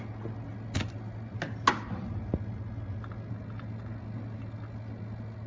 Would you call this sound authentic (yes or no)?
yes